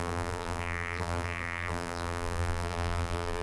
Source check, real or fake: fake